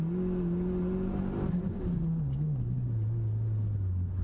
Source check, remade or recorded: recorded